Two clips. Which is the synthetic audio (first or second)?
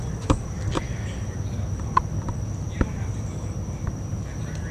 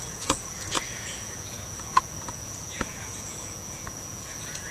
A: second